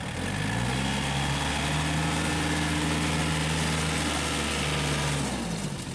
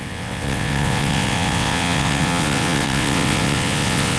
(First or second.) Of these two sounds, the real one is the first